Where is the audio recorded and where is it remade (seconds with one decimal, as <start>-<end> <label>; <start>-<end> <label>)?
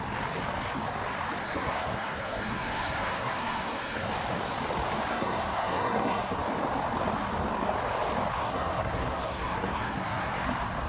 0.0-1.4 recorded; 1.4-4.1 remade; 4.1-5.1 recorded; 5.1-6.4 remade; 6.4-8.4 recorded; 8.4-10.3 remade; 10.3-10.9 recorded